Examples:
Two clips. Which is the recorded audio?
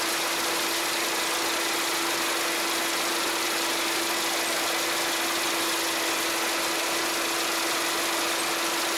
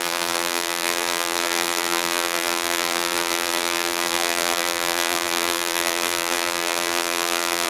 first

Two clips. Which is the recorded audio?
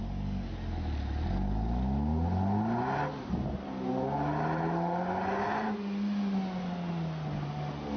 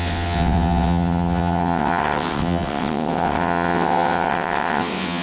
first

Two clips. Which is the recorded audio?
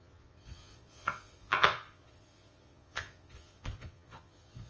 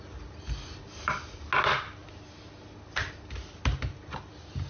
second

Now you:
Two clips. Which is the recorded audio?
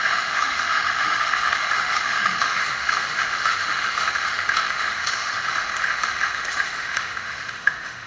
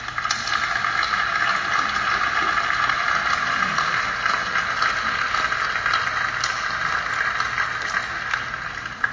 second